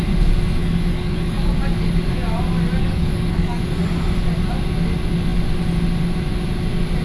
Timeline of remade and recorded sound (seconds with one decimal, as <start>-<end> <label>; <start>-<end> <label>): 0.0-0.6 recorded; 0.6-1.6 remade; 1.6-2.8 recorded; 2.8-3.6 remade; 3.6-7.0 recorded